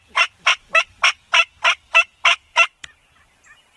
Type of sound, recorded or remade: recorded